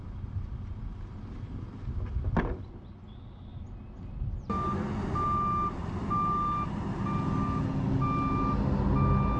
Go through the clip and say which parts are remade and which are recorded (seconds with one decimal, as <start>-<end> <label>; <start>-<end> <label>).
0.0-9.4 recorded